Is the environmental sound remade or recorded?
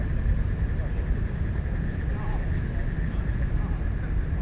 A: recorded